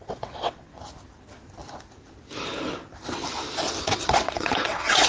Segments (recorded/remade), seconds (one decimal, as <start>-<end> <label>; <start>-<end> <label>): 0.0-0.7 remade; 0.7-3.8 recorded; 3.8-5.1 remade